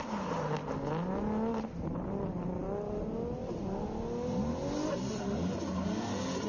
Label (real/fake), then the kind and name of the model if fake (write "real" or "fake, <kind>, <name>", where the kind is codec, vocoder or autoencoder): real